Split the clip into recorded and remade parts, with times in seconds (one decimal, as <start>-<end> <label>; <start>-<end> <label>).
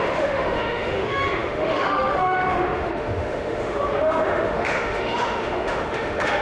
0.0-6.4 remade